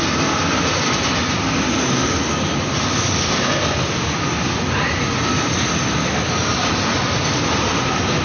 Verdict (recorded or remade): recorded